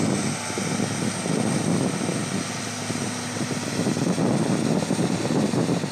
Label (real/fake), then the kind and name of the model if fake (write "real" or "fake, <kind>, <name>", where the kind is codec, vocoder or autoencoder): real